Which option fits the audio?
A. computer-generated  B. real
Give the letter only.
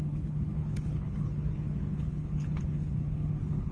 A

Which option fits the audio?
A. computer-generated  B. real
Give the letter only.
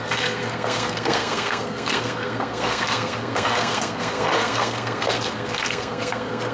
A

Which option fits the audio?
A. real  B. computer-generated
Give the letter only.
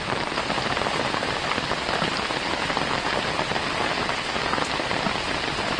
A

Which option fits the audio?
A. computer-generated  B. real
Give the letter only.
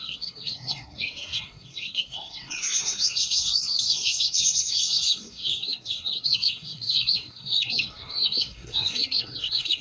A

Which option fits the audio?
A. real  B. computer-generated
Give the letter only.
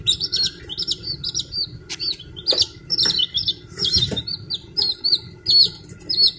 A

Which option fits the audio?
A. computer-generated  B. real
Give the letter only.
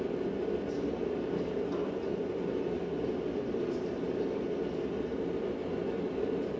B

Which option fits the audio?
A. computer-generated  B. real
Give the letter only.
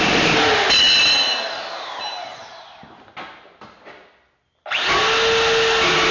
B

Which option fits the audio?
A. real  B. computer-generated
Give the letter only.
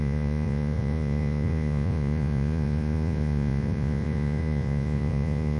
B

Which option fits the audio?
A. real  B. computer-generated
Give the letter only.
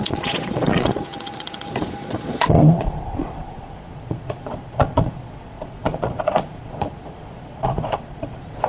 B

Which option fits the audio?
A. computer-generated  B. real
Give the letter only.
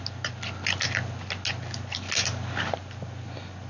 B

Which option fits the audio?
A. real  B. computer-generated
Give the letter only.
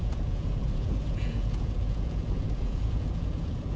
B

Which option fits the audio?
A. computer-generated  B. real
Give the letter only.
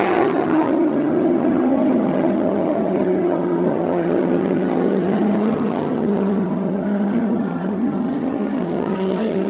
A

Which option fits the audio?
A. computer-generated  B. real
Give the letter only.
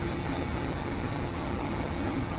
A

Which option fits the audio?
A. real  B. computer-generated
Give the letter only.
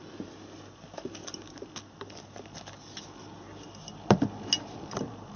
A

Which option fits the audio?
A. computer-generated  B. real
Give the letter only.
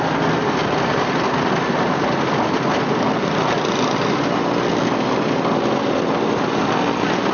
B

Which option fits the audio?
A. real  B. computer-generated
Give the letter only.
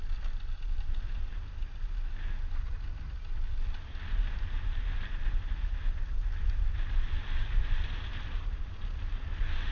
A